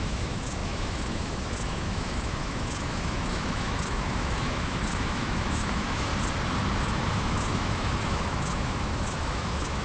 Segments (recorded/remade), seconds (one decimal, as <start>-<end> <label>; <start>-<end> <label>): 0.0-6.1 remade; 6.1-6.8 recorded; 6.8-9.8 remade